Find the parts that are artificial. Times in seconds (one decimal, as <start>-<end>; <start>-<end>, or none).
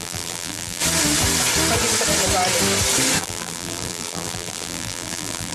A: 0.0-0.8; 3.2-5.5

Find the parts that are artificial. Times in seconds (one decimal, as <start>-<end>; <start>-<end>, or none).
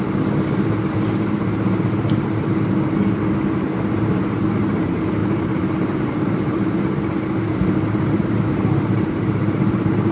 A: 5.2-10.1